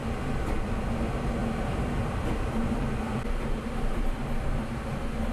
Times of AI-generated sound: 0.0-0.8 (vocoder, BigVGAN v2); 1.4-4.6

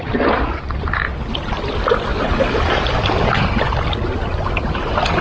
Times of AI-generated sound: none

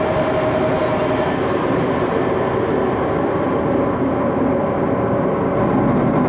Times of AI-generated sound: 1.0-4.1 (vocoder, BigVGAN v2)